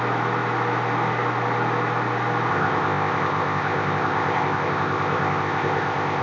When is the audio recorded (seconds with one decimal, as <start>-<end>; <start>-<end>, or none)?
0.0-2.5